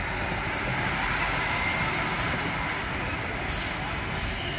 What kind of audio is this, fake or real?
real